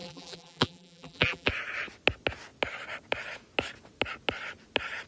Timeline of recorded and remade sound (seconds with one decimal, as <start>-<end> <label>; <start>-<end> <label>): 0.0-1.5 remade; 1.5-5.1 recorded